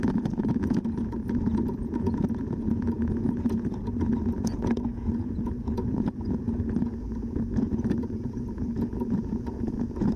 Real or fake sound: fake